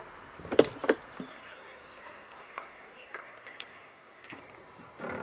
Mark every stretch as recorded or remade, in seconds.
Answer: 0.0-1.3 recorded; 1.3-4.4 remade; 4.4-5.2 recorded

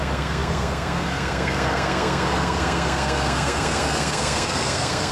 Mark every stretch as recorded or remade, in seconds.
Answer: 0.0-5.1 remade

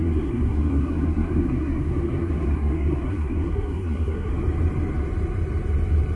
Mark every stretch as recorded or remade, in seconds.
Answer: 0.0-4.3 remade; 4.3-6.2 recorded

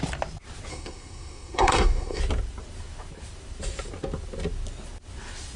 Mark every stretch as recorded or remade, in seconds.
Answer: 0.0-0.7 recorded; 0.7-2.2 remade; 2.2-5.6 recorded